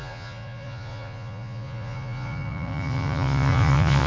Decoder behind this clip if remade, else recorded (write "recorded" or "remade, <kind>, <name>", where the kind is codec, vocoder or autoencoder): remade, vocoder, Vocos